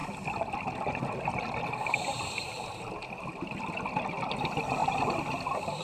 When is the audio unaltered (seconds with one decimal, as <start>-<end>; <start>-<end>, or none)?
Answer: 0.0-5.8